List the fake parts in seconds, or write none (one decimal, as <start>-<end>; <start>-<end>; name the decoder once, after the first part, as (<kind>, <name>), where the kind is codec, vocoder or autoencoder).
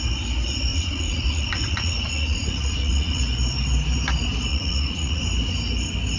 0.7-3.2 (vocoder, Vocos); 4.5-5.2